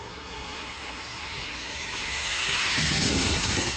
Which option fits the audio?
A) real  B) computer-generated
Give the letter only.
B